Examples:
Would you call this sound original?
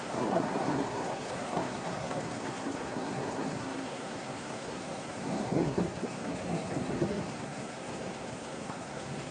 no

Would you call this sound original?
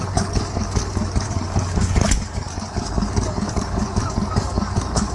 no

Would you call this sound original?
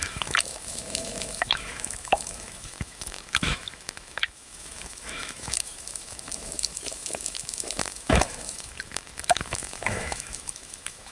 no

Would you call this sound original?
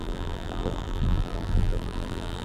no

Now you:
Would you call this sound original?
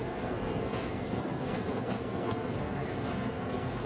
no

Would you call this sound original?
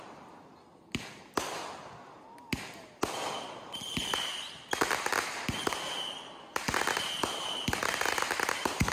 yes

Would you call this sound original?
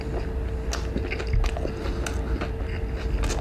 yes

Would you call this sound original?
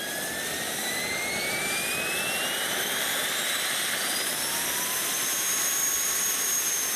no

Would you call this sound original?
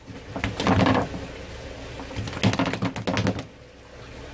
yes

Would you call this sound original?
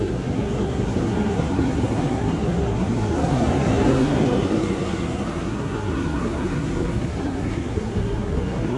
no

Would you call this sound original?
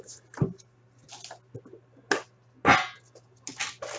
yes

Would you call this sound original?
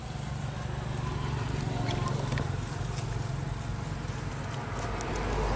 yes